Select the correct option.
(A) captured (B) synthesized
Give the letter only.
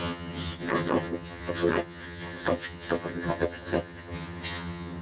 B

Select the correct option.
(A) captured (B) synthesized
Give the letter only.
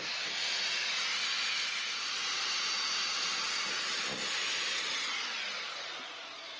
A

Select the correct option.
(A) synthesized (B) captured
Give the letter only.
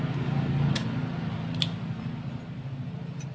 B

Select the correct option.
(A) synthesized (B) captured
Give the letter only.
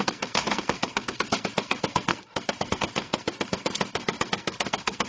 A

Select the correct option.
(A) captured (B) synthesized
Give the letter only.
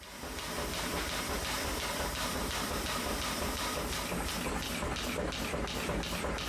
A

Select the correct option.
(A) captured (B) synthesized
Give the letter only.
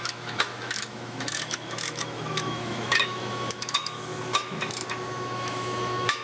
B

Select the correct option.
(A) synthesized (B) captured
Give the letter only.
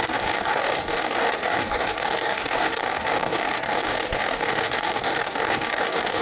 A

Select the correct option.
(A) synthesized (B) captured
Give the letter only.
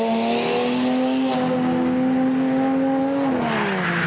B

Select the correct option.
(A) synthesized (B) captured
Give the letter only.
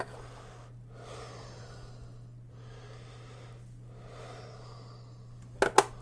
B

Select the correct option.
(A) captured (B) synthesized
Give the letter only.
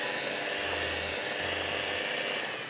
A